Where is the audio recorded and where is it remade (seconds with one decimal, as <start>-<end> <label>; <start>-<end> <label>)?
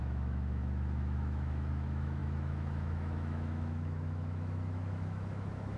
0.0-5.8 remade